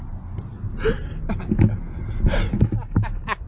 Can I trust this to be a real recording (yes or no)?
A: yes